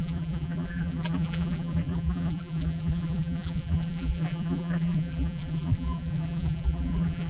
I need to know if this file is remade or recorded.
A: remade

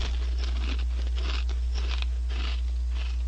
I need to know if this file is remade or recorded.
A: recorded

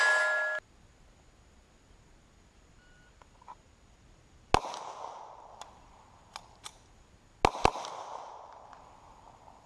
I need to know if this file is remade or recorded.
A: recorded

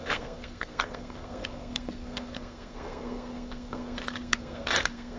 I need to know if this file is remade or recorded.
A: remade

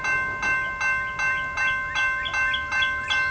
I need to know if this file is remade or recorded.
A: recorded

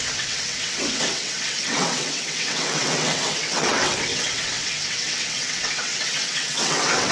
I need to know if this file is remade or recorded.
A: remade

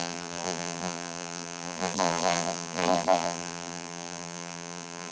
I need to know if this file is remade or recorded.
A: remade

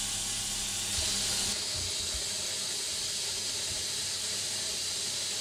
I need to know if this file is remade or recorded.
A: recorded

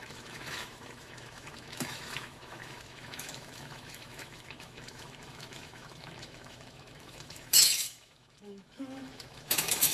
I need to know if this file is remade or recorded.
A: remade